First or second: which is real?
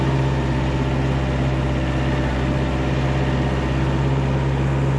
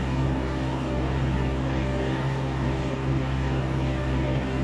first